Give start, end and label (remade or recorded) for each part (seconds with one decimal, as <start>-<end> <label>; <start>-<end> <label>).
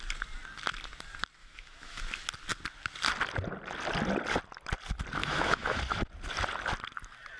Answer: 0.0-1.4 recorded; 1.4-2.0 remade; 2.0-5.2 recorded; 5.2-5.8 remade; 5.8-7.4 recorded